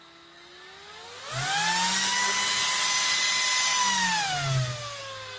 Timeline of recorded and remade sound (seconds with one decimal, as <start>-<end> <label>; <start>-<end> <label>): 0.0-5.4 recorded